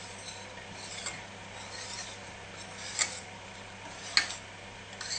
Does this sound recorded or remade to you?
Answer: recorded